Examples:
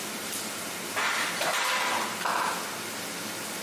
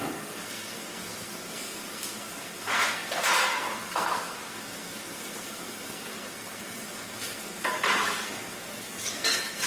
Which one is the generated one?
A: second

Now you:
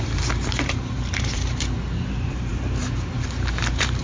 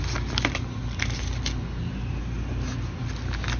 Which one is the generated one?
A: first